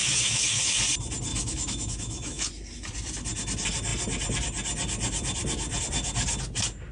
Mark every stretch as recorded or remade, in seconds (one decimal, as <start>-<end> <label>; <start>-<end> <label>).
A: 0.0-0.8 remade; 0.8-1.3 recorded; 1.3-2.5 remade; 2.5-6.9 recorded